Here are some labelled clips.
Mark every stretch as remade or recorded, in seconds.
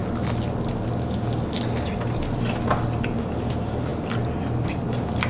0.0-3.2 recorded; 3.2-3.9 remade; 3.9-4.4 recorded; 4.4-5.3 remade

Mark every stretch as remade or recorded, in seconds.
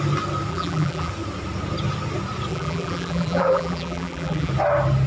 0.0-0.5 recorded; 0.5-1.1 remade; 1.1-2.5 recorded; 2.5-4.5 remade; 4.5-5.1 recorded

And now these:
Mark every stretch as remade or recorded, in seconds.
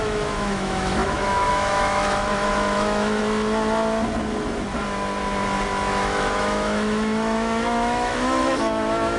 0.0-3.2 remade; 3.2-6.0 recorded; 6.0-9.2 remade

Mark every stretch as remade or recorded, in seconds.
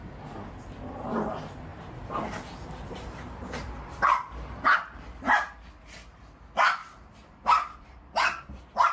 0.0-1.7 recorded; 1.7-5.5 remade; 5.5-6.8 recorded; 6.8-8.0 remade; 8.0-8.9 recorded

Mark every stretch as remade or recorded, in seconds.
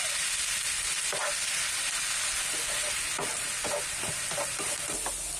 0.0-5.4 recorded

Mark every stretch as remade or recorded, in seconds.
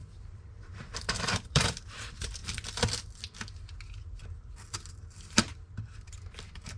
0.0-2.4 remade; 2.4-4.9 recorded; 4.9-6.8 remade